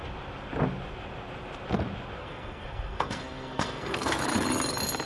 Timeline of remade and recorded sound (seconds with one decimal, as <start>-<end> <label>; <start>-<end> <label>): 0.0-2.2 recorded; 2.2-4.2 remade; 4.2-5.1 recorded